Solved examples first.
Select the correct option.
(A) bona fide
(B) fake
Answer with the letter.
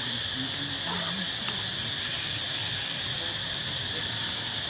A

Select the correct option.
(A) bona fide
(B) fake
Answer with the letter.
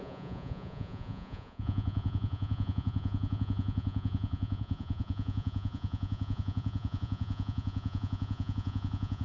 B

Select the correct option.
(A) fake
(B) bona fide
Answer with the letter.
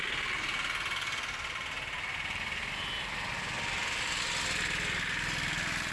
B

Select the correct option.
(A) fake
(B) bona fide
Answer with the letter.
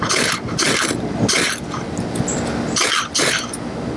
B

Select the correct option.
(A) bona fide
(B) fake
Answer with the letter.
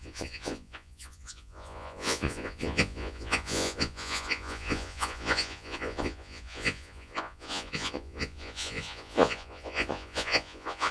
B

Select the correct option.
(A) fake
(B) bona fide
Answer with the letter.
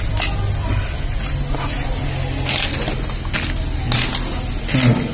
B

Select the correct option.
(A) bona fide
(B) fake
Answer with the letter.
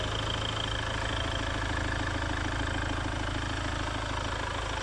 A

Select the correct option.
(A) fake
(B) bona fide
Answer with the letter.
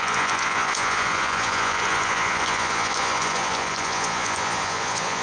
A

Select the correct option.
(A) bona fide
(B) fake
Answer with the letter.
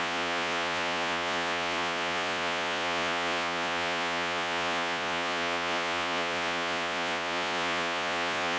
B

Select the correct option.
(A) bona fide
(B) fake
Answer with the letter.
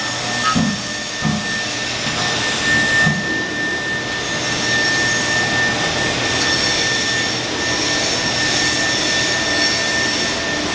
A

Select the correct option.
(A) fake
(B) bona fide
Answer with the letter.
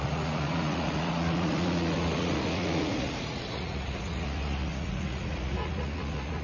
A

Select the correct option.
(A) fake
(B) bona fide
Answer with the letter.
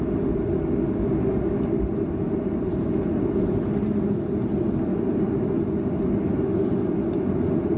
B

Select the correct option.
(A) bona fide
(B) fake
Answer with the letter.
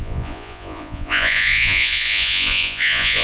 B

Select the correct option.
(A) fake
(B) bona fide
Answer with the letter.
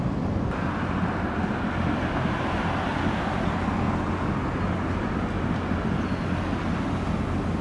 B